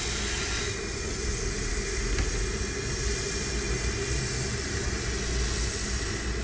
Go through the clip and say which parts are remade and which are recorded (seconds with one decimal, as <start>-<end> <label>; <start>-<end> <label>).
0.0-6.4 recorded